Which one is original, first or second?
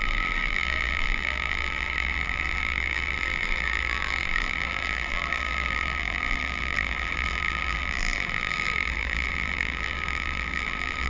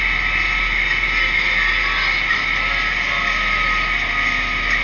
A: second